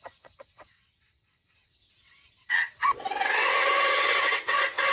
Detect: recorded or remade remade